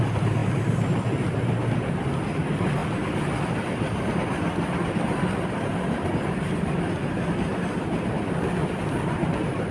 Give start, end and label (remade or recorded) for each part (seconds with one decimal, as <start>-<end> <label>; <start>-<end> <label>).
0.0-9.7 recorded